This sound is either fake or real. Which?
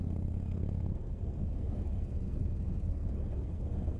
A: fake